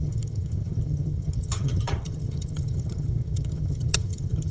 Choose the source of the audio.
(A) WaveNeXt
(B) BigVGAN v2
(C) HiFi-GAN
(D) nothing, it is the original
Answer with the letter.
C